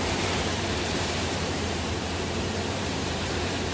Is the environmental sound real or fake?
fake